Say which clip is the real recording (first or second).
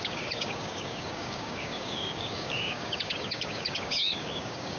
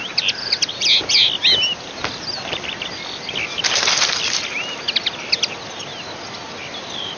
second